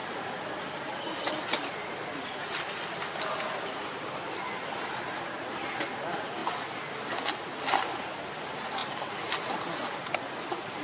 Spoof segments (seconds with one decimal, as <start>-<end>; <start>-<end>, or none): 0.0-2.2; 8.8-9.5